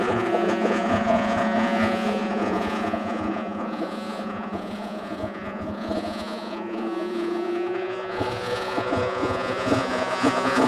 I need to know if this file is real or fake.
fake